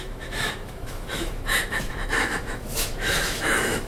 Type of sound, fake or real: fake